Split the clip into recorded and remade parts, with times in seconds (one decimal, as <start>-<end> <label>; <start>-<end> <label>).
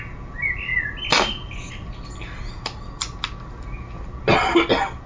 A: 0.0-5.1 recorded